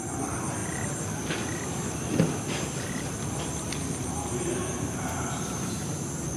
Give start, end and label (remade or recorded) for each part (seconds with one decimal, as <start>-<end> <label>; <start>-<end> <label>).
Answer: 0.0-4.0 recorded; 4.0-5.9 remade; 5.9-6.4 recorded